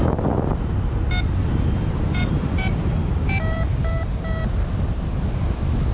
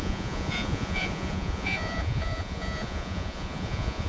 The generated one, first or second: second